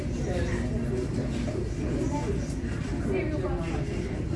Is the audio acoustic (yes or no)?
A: yes